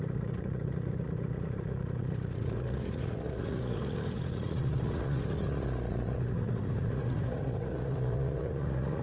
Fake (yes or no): yes